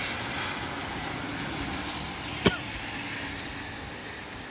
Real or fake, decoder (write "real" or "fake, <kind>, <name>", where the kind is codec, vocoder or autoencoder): real